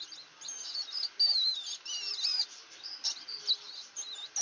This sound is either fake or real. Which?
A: real